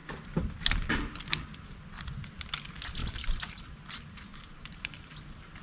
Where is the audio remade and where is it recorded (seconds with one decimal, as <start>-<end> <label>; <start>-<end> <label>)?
0.0-3.0 recorded; 3.0-3.6 remade; 3.6-4.3 recorded; 4.3-5.1 remade; 5.1-5.6 recorded